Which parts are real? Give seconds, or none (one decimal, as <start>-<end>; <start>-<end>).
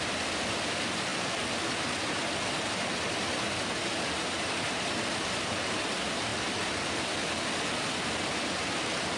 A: 1.1-4.0; 6.3-8.2